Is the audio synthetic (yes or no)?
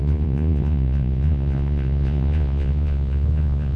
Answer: yes